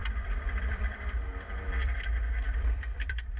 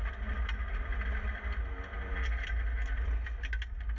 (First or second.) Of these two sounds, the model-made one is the first